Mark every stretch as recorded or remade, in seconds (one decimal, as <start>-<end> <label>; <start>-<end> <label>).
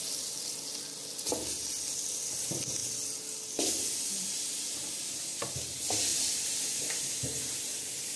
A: 0.0-6.1 recorded; 6.1-8.2 remade